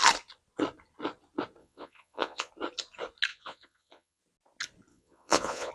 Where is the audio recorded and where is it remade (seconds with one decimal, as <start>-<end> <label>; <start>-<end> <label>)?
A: 0.0-1.6 recorded; 1.6-2.5 remade; 2.5-3.3 recorded; 3.3-4.2 remade; 4.2-4.9 recorded; 4.9-5.7 remade